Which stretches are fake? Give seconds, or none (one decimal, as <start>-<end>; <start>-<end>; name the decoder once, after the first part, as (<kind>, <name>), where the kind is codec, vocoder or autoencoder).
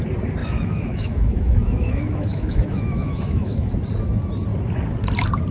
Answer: 0.4-3.7 (autoencoder, DAC-VAE)